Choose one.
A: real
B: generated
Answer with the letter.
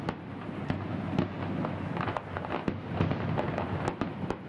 A